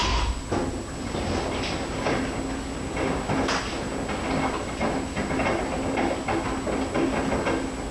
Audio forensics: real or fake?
real